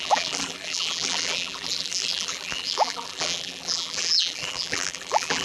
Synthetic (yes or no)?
yes